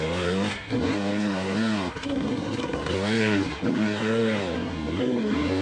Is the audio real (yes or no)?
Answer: no